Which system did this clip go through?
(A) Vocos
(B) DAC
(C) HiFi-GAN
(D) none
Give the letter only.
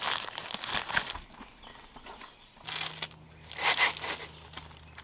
D